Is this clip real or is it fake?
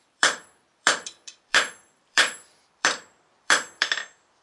fake